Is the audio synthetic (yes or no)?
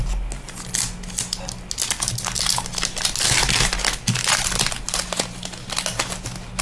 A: no